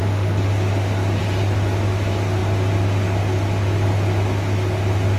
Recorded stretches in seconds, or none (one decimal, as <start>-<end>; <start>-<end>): 0.0-5.2

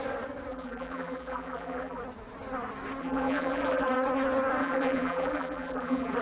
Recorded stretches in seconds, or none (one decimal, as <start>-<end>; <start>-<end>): 0.0-0.5; 2.0-3.0; 3.9-4.6

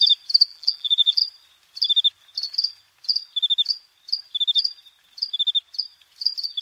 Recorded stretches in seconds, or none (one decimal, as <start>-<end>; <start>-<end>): 0.0-0.5; 1.2-6.6

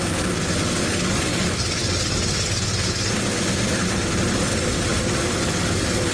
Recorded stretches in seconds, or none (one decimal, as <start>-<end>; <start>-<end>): 0.0-4.9; 5.6-6.1

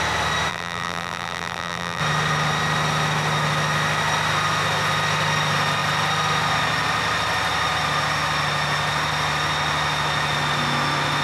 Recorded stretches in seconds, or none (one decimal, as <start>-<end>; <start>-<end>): 0.0-0.5; 2.0-11.2

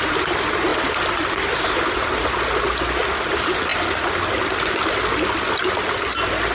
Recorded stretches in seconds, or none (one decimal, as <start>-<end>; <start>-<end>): 0.0-6.5

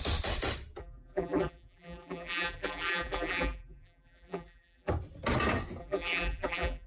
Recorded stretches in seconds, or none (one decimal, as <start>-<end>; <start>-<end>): 0.0-0.8; 4.9-5.8

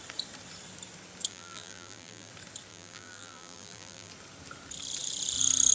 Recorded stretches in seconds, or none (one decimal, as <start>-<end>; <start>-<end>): 0.0-1.3; 2.3-2.7; 4.1-5.7